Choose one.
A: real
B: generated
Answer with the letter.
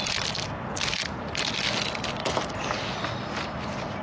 A